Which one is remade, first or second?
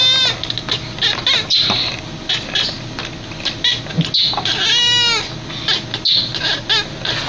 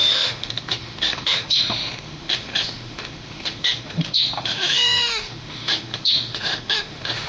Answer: second